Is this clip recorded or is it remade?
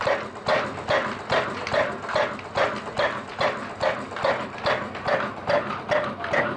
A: recorded